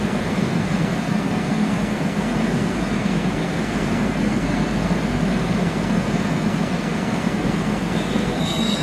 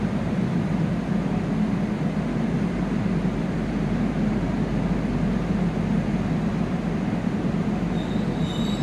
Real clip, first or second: second